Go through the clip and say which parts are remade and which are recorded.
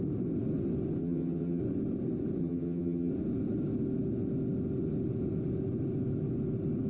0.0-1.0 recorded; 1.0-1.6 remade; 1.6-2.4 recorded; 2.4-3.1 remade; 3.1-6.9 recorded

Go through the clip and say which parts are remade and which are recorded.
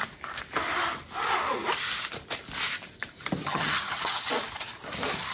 0.0-3.4 recorded; 3.4-4.3 remade; 4.3-5.3 recorded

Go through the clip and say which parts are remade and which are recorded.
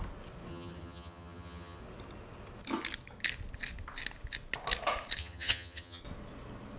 0.0-0.5 recorded; 0.5-1.8 remade; 1.8-5.2 recorded; 5.2-6.0 remade; 6.0-6.8 recorded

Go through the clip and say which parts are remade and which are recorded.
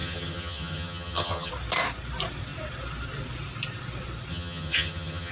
0.0-1.5 remade; 1.5-4.3 recorded; 4.3-5.3 remade